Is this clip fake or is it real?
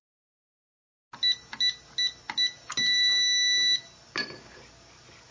real